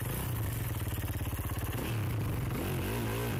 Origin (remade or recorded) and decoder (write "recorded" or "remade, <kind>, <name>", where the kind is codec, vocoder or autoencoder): recorded